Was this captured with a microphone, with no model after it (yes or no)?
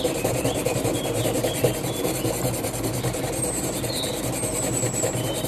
no